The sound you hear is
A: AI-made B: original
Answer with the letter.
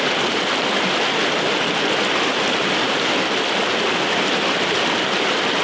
B